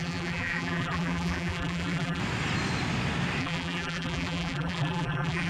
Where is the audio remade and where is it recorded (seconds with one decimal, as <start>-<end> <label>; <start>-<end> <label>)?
0.0-2.2 remade; 2.2-3.4 recorded; 3.4-5.5 remade